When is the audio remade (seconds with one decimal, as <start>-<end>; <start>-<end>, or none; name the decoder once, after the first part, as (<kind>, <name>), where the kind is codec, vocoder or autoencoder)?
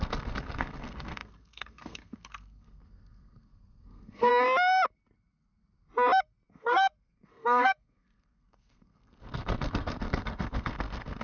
0.0-4.3 (codec, SNAC); 6.5-11.2